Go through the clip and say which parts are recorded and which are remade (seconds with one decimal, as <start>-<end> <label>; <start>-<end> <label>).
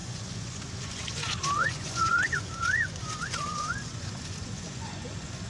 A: 0.0-5.5 remade